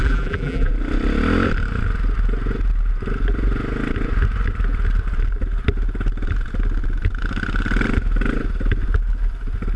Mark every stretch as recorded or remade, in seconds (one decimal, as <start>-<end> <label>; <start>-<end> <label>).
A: 0.0-0.7 remade; 0.7-9.8 recorded